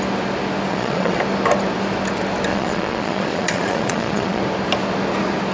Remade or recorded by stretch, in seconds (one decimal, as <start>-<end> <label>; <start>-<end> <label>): 0.0-0.7 recorded; 0.7-1.2 remade; 1.2-2.5 recorded; 2.5-4.4 remade; 4.4-5.5 recorded